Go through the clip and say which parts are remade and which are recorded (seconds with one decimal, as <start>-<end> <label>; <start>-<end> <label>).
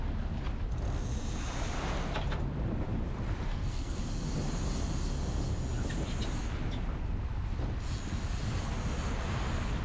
0.0-3.5 recorded; 3.5-4.0 remade; 4.0-9.8 recorded